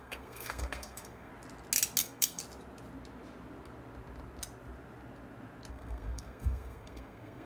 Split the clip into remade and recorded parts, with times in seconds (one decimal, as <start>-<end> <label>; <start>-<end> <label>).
0.0-1.3 remade; 1.3-2.0 recorded; 2.0-2.4 remade; 2.4-5.7 recorded; 5.7-7.5 remade